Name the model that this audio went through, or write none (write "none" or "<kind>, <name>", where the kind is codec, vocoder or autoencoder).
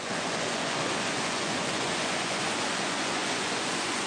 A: vocoder, Vocos